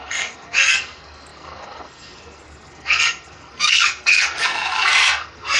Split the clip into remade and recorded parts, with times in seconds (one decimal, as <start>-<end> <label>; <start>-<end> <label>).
0.0-5.6 remade